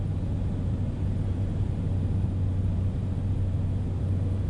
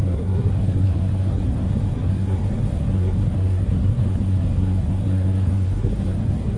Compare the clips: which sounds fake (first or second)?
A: second